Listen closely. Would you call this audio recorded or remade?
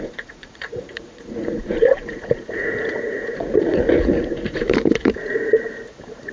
remade